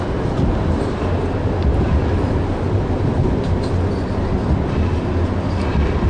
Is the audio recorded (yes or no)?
yes